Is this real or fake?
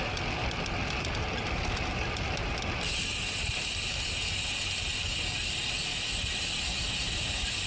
real